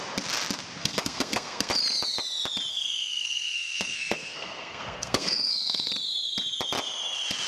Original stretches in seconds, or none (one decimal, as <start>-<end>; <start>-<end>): 0.0-0.8; 1.7-2.7; 5.9-7.5